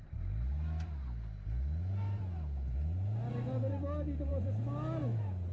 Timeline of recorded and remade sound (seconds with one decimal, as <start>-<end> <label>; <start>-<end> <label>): 0.0-5.5 recorded